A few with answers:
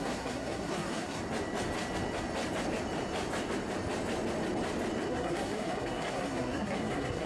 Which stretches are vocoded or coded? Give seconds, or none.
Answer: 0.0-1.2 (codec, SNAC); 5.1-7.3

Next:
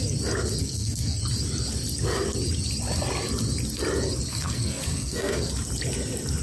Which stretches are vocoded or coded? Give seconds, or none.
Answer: 0.6-1.2 (codec, SNAC); 4.3-5.5